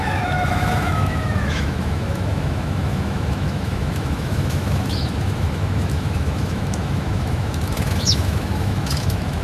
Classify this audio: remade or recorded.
remade